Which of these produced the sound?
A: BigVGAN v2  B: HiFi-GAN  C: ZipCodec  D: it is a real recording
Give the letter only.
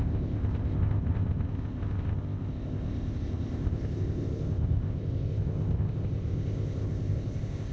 C